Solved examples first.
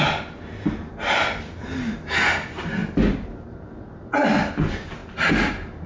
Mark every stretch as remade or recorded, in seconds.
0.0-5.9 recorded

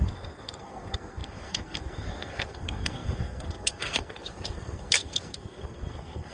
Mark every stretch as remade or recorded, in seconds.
0.0-6.3 remade

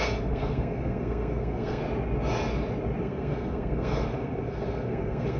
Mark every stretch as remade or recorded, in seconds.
0.0-1.8 remade; 1.8-3.0 recorded; 3.0-5.4 remade

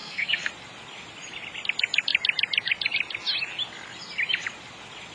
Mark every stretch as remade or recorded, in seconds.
0.0-0.5 remade; 0.5-5.1 recorded

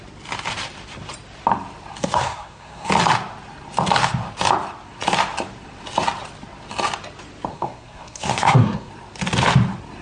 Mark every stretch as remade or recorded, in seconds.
0.0-2.0 recorded; 2.0-2.9 remade; 2.9-7.5 recorded; 7.5-8.9 remade; 8.9-10.0 recorded

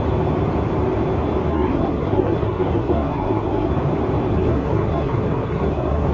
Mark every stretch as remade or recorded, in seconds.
0.0-1.5 recorded; 1.5-3.7 remade; 3.7-4.3 recorded; 4.3-6.1 remade

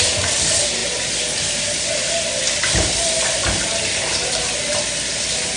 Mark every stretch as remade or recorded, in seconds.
0.0-5.6 recorded

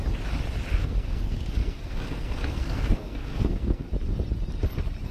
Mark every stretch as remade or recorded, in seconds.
0.0-0.8 recorded; 0.8-3.9 remade; 3.9-5.1 recorded